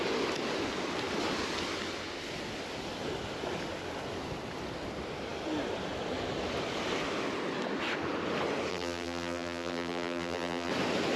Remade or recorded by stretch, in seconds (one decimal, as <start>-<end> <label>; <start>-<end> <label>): 0.0-8.7 recorded; 8.7-10.7 remade; 10.7-11.2 recorded